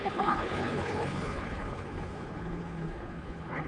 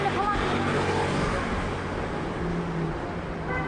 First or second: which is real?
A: second